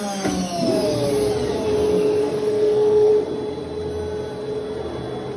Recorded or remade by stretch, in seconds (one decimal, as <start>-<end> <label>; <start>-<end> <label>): 0.0-2.2 recorded; 2.2-3.1 remade; 3.1-5.4 recorded